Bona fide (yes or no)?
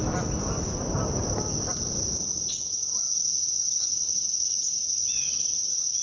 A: yes